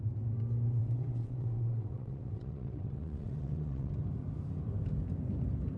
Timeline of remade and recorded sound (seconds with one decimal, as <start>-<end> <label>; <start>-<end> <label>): 0.0-0.8 recorded; 0.8-3.9 remade; 3.9-5.8 recorded